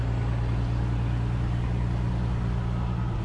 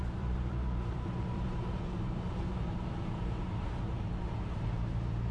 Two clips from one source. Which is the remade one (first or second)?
second